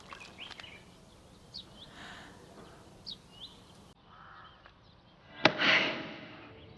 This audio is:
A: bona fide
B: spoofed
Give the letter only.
A